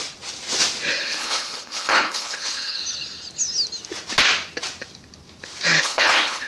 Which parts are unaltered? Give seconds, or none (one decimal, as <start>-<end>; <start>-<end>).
0.0-1.0; 2.8-5.8